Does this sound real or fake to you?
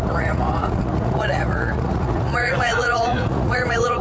fake